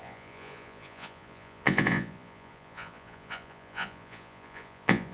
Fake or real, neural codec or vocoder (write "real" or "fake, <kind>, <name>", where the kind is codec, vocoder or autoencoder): fake, vocoder, Vocos